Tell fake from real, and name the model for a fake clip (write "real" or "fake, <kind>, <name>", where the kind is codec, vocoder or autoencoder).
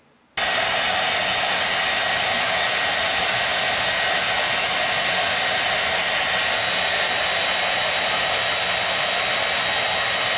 real